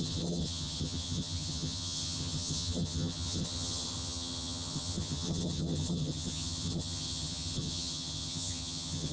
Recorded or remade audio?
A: remade